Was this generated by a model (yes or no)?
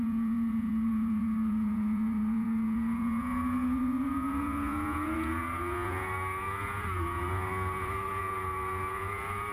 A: yes